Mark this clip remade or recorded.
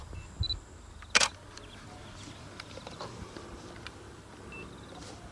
recorded